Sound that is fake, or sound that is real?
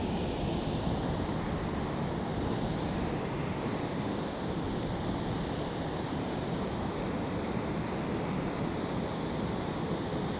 real